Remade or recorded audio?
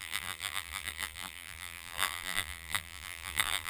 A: remade